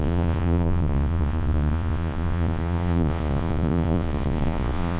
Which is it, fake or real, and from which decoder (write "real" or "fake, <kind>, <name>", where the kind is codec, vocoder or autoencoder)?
fake, vocoder, Vocos